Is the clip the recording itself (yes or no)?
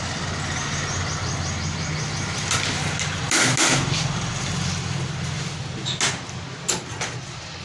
yes